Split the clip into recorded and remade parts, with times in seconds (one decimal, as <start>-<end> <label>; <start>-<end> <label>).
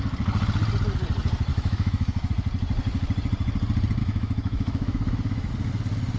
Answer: 0.0-1.5 recorded; 1.5-2.3 remade; 2.3-4.0 recorded; 4.0-5.5 remade; 5.5-6.2 recorded